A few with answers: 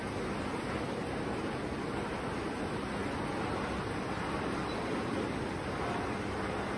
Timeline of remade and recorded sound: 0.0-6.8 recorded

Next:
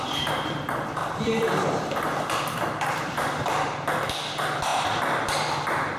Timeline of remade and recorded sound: 0.0-1.0 recorded; 1.0-4.1 remade; 4.1-6.0 recorded

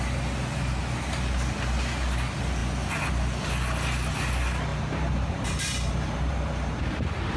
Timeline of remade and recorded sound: 0.0-4.7 recorded; 4.7-7.4 remade

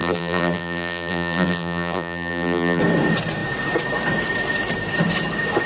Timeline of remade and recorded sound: 0.0-2.8 remade; 2.8-5.7 recorded

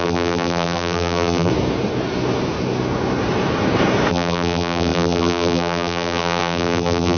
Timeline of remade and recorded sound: 0.0-1.5 remade; 1.5-4.1 recorded; 4.1-7.2 remade

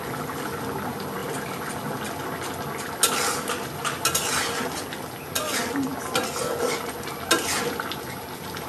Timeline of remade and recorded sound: 0.0-8.7 recorded

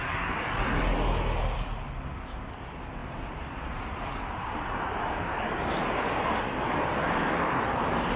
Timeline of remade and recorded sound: 0.0-3.0 recorded; 3.0-6.1 remade; 6.1-8.2 recorded

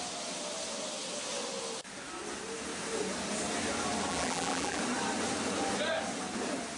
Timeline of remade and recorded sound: 0.0-4.1 recorded; 4.1-4.8 remade; 4.8-6.8 recorded